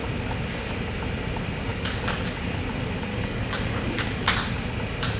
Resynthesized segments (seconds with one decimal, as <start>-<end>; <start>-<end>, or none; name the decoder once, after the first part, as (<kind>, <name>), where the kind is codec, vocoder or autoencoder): 1.7-2.6 (codec, DAC); 3.1-4.3